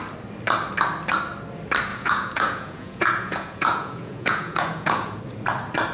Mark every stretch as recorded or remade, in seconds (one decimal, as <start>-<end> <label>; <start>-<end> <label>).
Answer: 0.0-1.9 recorded; 1.9-5.2 remade; 5.2-5.9 recorded